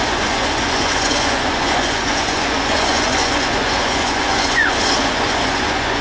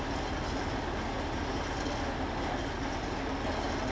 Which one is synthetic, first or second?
first